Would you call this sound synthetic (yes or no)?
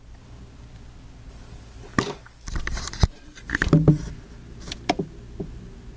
no